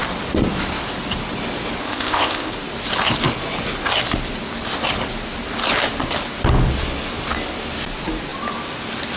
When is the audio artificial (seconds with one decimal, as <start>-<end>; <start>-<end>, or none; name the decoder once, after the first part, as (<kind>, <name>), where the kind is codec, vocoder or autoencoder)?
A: 1.8-2.5 (codec, ZipCodec)